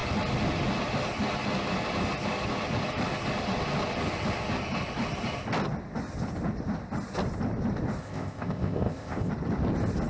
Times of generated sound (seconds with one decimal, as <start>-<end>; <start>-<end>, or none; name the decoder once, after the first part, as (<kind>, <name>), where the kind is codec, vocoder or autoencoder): 8.0-9.3 (codec, ZipCodec)